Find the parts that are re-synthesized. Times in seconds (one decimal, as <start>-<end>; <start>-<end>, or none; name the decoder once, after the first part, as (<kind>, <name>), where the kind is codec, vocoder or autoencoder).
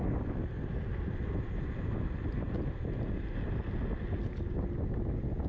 none